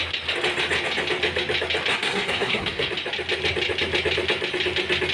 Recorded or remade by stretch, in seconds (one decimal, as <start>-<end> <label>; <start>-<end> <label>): 0.0-1.9 recorded; 1.9-2.9 remade; 2.9-5.1 recorded